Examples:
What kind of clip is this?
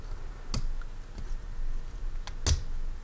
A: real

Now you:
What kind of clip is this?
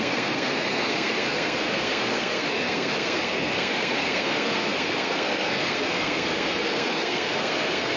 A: fake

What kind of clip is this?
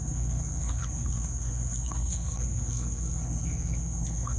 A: fake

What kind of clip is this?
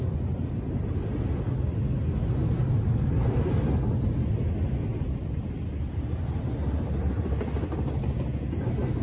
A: real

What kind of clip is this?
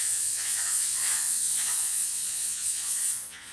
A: fake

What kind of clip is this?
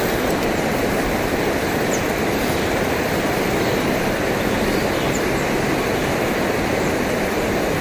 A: fake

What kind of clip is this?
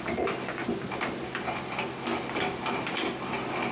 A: real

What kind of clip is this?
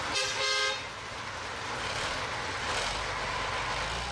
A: real